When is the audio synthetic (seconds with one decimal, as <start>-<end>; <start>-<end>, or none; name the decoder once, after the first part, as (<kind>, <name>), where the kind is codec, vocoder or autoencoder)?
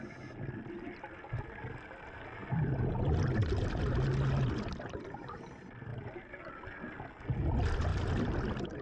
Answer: none